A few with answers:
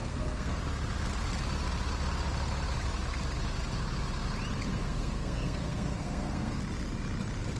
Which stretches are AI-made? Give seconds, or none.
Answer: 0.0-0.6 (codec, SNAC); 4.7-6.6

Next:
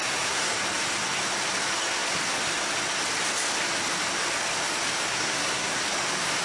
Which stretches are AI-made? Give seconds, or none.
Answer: 0.0-0.6 (codec, SNAC); 5.1-5.8

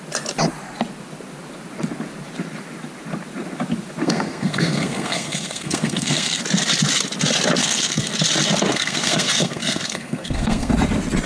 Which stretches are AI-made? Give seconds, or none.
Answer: 4.0-6.4 (codec, SNAC); 7.6-8.1; 8.7-10.7

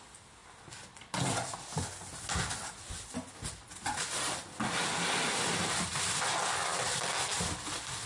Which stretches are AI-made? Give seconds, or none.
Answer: none

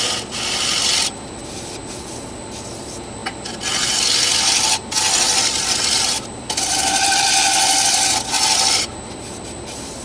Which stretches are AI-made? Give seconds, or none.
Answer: none

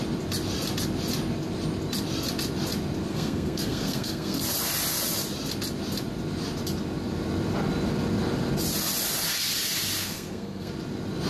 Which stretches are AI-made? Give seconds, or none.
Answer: 3.1-4.4 (codec, SNAC); 10.0-10.7